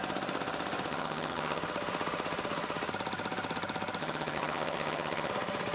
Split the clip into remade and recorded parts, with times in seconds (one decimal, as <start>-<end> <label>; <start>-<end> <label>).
0.0-0.9 recorded; 0.9-1.6 remade; 1.6-4.0 recorded; 4.0-5.3 remade; 5.3-5.7 recorded